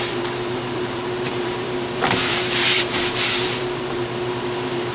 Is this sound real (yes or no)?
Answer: no